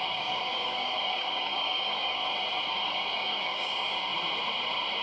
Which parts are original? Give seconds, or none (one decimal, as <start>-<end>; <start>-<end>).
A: 2.2-2.7; 4.1-5.0

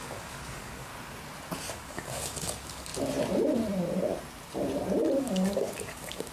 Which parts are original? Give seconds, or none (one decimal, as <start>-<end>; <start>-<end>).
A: 0.9-1.7; 2.9-5.2

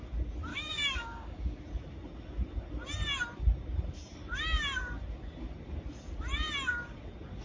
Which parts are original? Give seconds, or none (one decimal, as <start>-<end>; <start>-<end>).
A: 0.0-0.5; 1.6-7.4

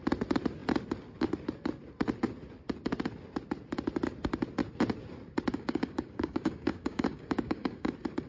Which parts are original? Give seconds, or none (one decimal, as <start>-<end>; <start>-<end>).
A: 0.0-5.5; 7.9-8.3

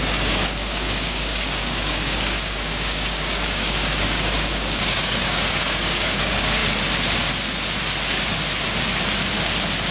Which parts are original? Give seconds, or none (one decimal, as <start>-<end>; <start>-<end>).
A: 6.6-9.9

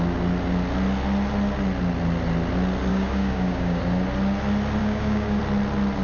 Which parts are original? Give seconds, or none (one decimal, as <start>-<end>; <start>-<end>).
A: 0.0-2.9; 3.8-4.8; 5.4-6.0

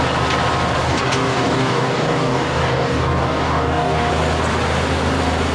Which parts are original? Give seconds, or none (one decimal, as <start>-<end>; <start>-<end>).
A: 0.0-0.8; 4.1-5.5

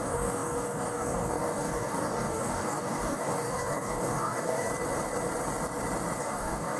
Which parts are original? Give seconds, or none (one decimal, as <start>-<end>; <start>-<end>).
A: 4.7-6.2